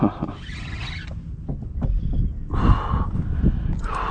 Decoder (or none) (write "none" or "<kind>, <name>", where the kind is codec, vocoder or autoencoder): none